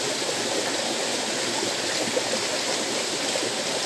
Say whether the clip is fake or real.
real